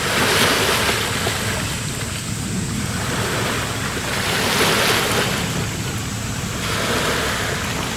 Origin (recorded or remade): recorded